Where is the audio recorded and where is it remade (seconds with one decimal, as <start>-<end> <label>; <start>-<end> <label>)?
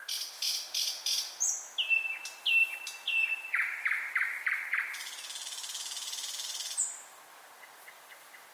0.0-3.6 recorded; 3.6-4.6 remade; 4.6-8.5 recorded